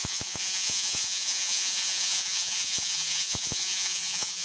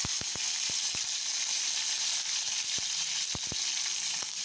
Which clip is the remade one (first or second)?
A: first